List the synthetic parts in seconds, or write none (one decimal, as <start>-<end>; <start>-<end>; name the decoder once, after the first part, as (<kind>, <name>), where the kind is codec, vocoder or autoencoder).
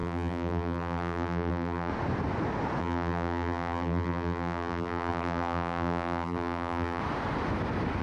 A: 0.0-1.9 (vocoder, BigVGAN v2); 2.8-7.0